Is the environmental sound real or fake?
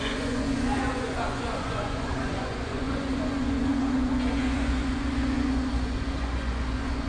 fake